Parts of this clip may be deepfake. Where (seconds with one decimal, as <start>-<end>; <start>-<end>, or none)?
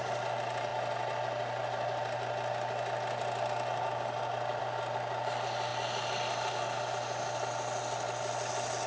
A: none